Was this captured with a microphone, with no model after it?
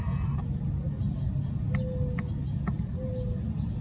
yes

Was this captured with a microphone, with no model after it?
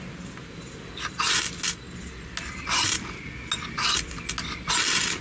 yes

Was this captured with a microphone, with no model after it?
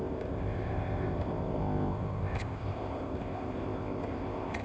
no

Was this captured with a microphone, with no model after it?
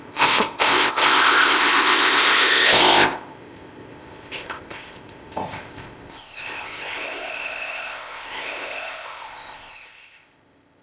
no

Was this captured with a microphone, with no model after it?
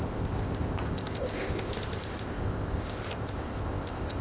no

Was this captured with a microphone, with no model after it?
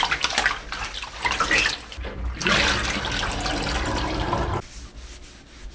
yes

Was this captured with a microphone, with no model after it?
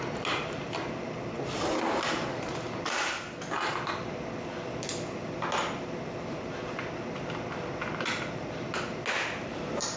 yes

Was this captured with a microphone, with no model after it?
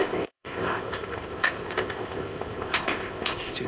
no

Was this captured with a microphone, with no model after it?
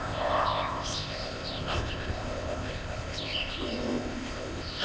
no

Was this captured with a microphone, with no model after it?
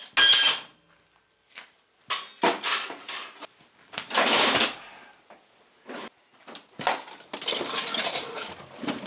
yes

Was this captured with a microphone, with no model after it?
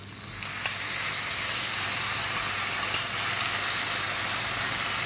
yes